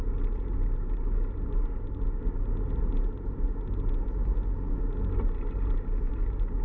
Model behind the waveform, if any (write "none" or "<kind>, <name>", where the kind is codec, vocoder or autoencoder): none